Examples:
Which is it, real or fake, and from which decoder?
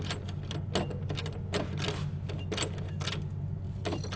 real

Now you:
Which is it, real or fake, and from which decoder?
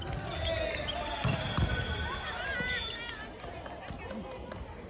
real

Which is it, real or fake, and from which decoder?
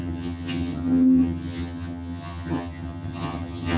fake, vocoder, HiFi-GAN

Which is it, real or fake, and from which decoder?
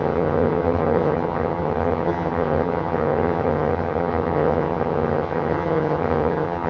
fake, vocoder, HiFi-GAN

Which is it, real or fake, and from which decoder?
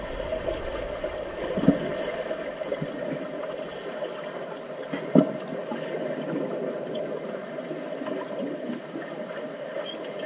real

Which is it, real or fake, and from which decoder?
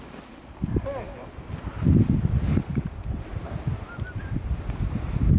real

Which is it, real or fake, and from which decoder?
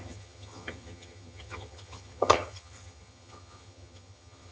fake, vocoder, HiFi-GAN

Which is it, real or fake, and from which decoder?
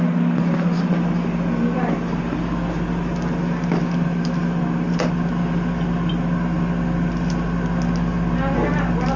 real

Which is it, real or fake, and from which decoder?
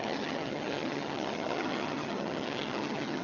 fake, vocoder, HiFi-GAN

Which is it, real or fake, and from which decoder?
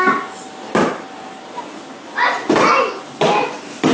real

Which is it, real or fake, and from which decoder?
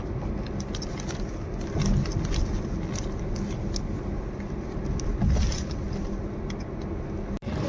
real